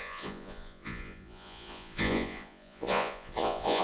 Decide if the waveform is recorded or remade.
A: remade